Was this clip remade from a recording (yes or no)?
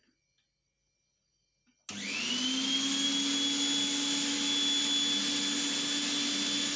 no